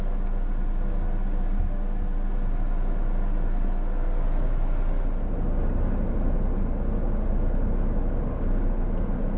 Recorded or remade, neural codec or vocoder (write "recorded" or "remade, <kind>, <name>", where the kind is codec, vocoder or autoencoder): recorded